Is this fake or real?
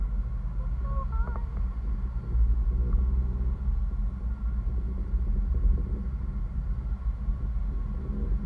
real